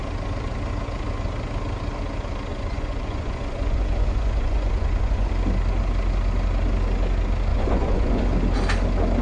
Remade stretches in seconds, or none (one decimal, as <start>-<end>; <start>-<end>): 2.5-5.3; 7.5-8.2